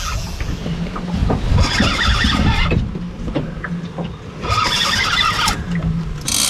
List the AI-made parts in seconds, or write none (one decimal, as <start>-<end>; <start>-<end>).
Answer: none